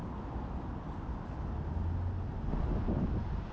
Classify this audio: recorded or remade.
recorded